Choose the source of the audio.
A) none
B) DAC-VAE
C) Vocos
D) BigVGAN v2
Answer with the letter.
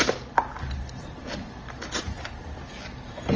A